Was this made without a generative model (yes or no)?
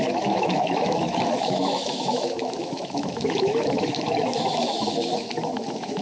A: no